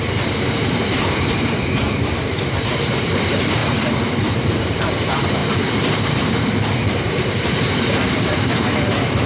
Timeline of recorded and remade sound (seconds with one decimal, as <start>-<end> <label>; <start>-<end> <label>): 0.0-9.3 remade